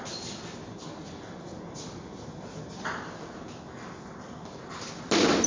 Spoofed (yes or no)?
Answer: no